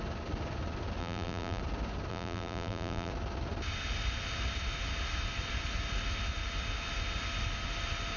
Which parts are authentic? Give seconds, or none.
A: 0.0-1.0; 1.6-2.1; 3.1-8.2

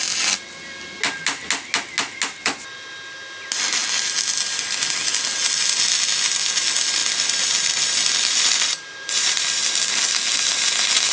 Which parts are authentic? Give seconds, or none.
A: 0.0-7.0; 9.7-11.1

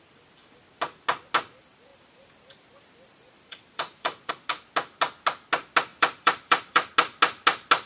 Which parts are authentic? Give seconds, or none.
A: 0.0-1.9; 4.3-5.9; 6.9-7.9

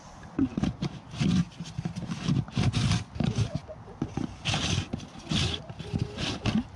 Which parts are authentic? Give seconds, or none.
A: 0.0-6.8

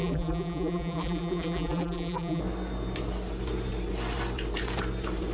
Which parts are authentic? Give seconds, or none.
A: 2.4-5.3

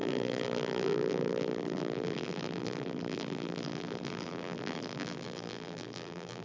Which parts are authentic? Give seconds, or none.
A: none

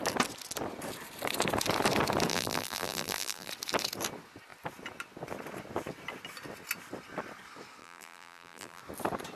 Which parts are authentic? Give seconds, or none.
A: 0.0-2.3; 3.5-7.8; 8.8-9.4